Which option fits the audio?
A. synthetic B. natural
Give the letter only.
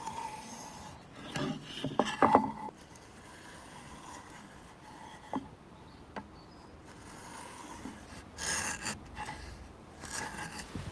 B